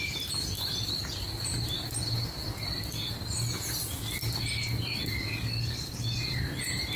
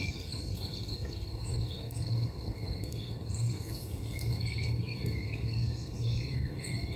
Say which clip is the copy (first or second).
second